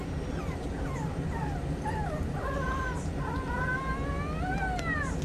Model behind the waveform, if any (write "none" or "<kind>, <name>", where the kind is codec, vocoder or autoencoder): none